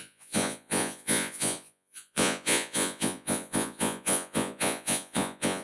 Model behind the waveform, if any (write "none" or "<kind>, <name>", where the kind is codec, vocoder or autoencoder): vocoder, Vocos